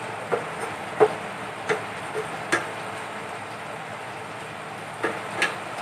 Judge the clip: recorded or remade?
recorded